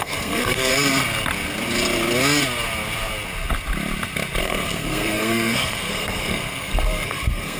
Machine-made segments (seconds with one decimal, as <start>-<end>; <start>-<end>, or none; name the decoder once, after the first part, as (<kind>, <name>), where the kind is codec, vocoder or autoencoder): 0.0-0.7 (codec, SNAC); 4.4-7.6